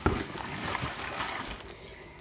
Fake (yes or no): yes